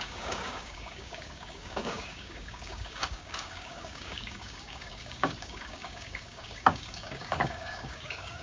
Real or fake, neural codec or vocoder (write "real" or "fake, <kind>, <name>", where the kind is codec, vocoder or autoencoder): fake, codec, DAC